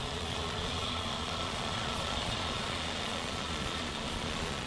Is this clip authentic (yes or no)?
no